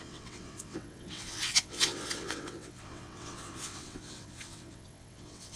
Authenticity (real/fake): fake